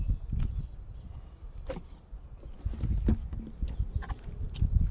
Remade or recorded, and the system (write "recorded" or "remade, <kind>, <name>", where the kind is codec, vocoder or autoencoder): recorded